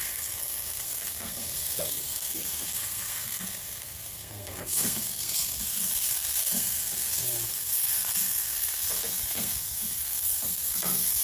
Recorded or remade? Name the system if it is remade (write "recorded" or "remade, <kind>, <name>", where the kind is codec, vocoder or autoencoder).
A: remade, codec, SNAC